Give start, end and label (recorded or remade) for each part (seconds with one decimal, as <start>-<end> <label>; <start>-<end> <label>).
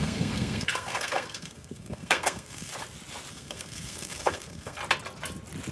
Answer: 0.0-2.7 remade; 2.7-3.3 recorded; 3.3-4.8 remade; 4.8-5.7 recorded